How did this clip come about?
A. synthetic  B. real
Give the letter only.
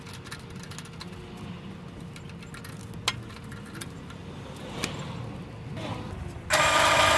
B